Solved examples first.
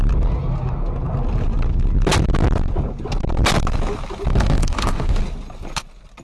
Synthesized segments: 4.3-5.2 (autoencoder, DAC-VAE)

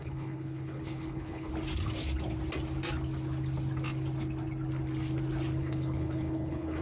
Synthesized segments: 0.0-1.5 (codec, HILCodec); 5.6-6.8

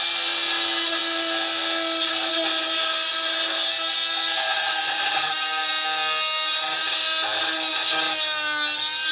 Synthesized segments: none

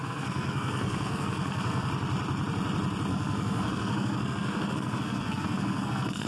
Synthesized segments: 0.0-1.9 (codec, SNAC); 3.1-6.3